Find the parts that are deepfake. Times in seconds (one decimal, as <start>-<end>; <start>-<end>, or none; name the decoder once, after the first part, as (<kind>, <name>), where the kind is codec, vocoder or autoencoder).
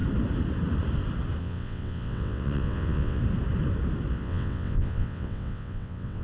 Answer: 1.4-3.2 (vocoder, WaveNeXt); 4.1-6.2